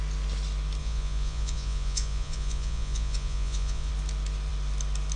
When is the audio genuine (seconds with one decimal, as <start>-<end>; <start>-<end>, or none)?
0.0-0.8; 3.9-5.2